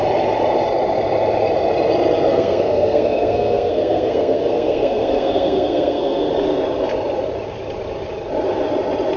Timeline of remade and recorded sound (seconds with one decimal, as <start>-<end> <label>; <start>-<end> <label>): 0.0-2.3 recorded; 2.3-6.3 remade; 6.3-9.2 recorded